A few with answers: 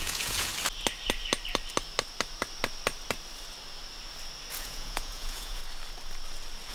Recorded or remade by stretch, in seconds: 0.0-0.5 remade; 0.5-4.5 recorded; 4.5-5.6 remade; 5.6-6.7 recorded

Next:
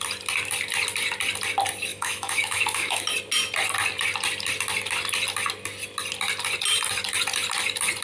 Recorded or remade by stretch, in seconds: 0.0-1.9 recorded; 1.9-3.0 remade; 3.0-8.0 recorded

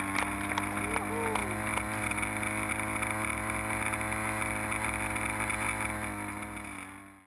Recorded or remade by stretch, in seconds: 0.0-7.3 recorded

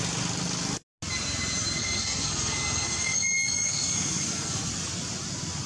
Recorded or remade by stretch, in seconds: 0.0-1.8 recorded; 1.8-4.7 remade; 4.7-5.7 recorded